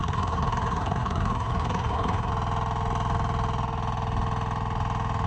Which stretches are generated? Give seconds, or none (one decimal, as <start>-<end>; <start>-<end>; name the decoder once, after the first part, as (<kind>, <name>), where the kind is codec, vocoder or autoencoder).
0.0-2.3 (codec, SNAC)